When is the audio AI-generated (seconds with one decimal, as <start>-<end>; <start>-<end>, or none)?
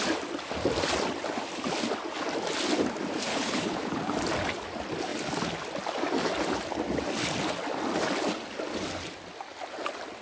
3.3-4.1